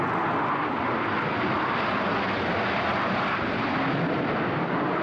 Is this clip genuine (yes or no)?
yes